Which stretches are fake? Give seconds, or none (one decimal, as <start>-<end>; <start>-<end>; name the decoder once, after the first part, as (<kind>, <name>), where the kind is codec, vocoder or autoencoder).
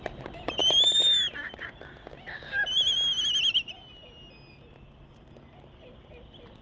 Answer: none